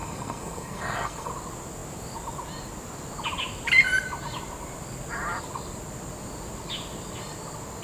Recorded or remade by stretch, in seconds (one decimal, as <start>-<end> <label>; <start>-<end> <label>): 0.0-1.3 remade; 1.3-7.8 recorded